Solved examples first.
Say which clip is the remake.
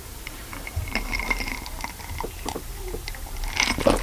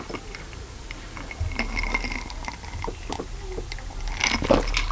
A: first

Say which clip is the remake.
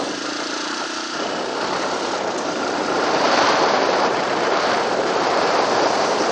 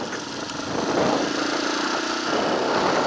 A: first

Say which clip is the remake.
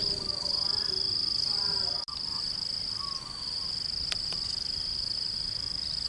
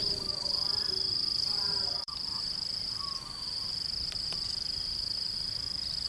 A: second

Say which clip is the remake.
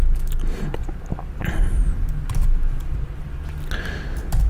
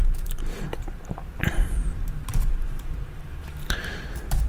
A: second